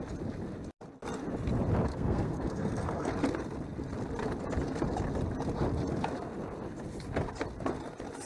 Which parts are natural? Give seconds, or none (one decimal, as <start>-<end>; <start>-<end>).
0.0-1.9; 3.1-8.3